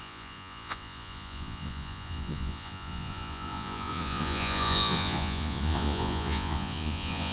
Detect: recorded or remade remade